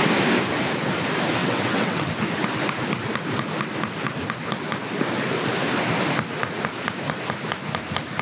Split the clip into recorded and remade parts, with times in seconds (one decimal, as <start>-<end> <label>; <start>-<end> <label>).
0.0-1.4 recorded; 1.4-2.1 remade; 2.1-8.2 recorded